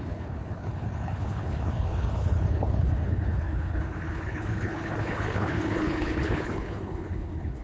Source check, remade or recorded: remade